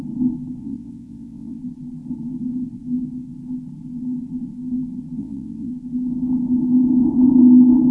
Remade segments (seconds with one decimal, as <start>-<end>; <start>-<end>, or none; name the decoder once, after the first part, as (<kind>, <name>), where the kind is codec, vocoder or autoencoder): 0.6-1.6 (vocoder, WaveNeXt); 5.2-5.7